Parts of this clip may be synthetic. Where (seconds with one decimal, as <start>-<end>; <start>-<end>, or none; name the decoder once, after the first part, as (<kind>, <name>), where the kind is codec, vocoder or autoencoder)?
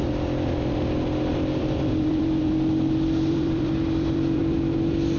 1.3-4.4 (vocoder, BigVGAN v2)